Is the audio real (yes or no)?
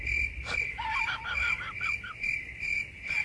yes